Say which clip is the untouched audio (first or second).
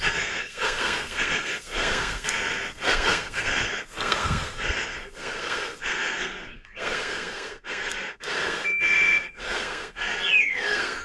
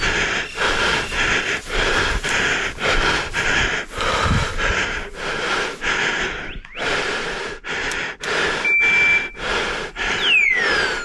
second